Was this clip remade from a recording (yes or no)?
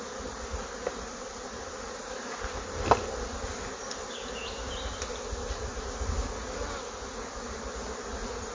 no